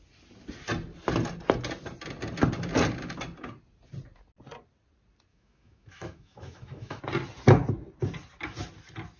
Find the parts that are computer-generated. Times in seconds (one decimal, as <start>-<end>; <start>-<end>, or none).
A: 5.3-7.0

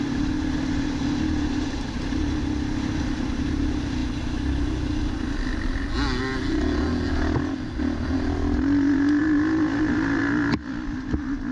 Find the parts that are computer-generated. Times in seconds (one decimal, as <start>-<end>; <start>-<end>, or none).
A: none

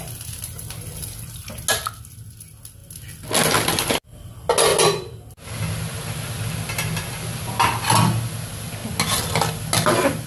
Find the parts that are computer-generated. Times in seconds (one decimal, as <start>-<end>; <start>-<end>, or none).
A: none